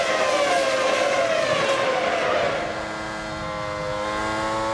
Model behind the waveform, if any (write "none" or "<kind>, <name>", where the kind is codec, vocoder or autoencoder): none